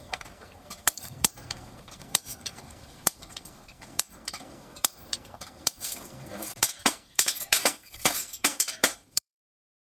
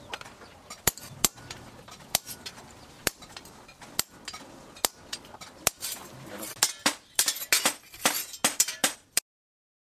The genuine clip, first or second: second